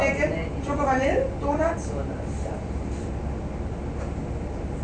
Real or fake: real